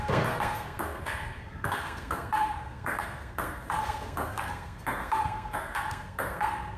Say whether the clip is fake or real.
fake